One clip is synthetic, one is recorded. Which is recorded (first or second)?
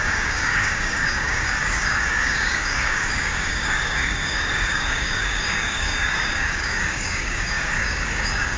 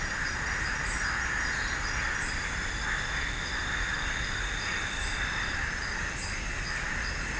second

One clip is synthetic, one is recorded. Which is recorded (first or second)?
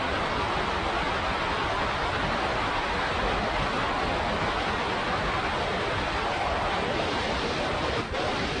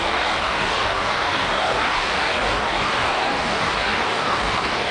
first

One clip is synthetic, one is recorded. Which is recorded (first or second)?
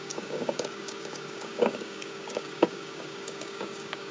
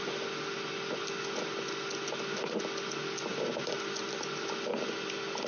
second